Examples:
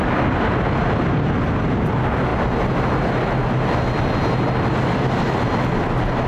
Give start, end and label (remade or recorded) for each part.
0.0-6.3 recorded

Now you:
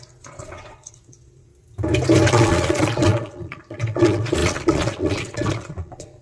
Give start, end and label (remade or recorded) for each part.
0.0-1.5 remade; 1.5-2.3 recorded; 2.3-6.2 remade